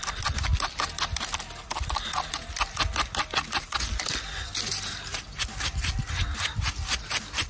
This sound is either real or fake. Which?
real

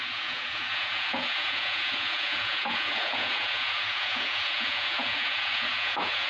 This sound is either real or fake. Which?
fake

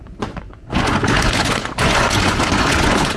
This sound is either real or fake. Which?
fake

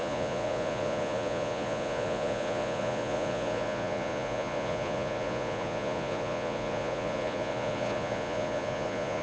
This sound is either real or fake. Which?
fake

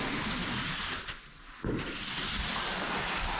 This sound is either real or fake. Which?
real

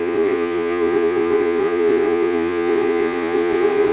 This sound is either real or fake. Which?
fake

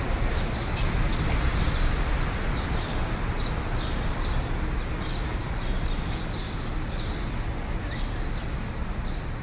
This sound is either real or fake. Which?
real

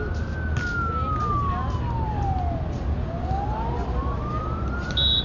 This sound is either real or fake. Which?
real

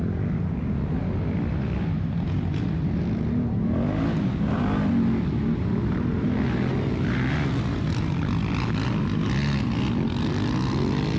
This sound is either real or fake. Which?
real